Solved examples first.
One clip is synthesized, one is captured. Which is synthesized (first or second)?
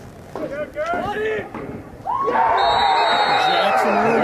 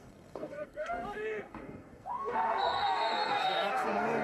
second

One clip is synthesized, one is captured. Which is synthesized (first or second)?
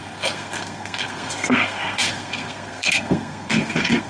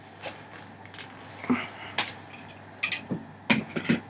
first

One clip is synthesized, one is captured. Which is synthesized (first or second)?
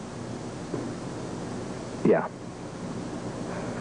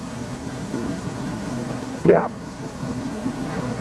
second